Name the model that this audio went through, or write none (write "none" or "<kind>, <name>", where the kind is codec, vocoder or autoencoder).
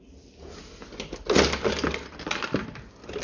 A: none